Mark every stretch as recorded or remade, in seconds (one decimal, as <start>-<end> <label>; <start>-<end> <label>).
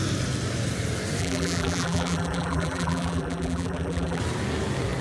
0.0-1.2 recorded; 1.2-4.2 remade; 4.2-5.0 recorded